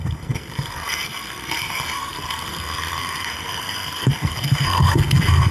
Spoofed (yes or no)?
yes